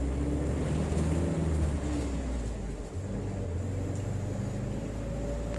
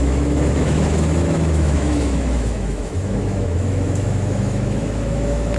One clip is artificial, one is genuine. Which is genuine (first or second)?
first